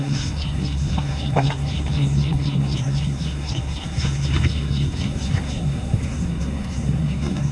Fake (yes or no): yes